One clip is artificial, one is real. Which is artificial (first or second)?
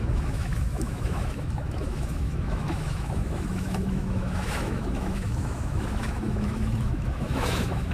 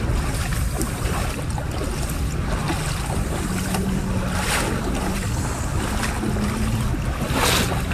first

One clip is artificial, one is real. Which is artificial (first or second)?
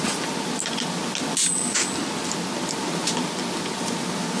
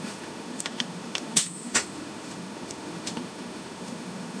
second